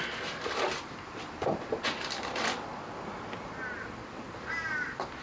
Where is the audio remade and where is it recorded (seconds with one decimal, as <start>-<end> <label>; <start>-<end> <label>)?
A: 0.0-5.2 recorded